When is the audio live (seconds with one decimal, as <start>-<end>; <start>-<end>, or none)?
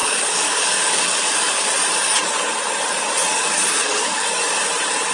1.7-3.3; 4.4-5.1